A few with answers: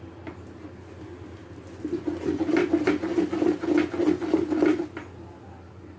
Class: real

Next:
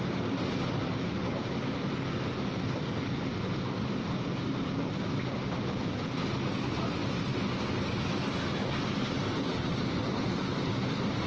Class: real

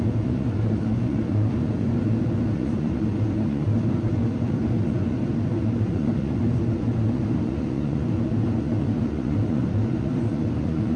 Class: fake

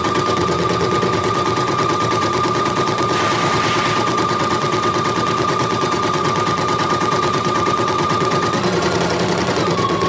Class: fake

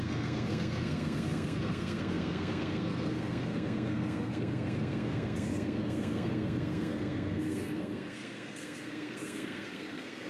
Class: fake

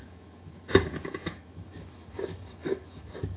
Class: fake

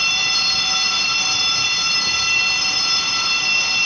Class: real